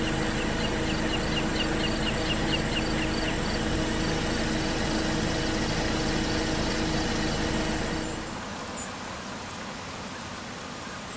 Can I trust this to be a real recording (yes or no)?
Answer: yes